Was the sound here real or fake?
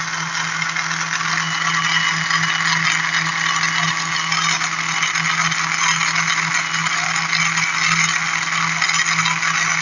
real